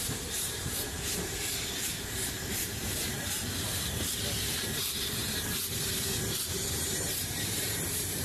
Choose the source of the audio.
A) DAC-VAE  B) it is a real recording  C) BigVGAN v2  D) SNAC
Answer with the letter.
C